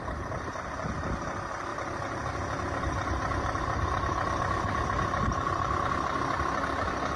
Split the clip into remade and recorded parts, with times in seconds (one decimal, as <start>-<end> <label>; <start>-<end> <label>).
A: 0.0-1.7 recorded; 1.7-5.8 remade; 5.8-7.2 recorded